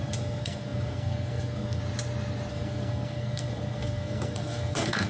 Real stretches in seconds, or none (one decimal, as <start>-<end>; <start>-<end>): 1.8-2.5